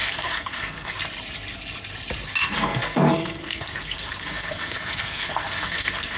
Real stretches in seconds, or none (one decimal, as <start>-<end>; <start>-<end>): 1.0-2.4